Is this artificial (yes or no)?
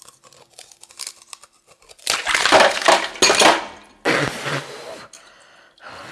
no